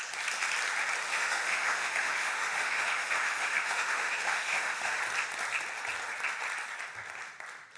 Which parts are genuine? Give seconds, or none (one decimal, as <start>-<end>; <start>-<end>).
0.0-1.1; 5.0-7.8